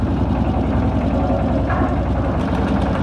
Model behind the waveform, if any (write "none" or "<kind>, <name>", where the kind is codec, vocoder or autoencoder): none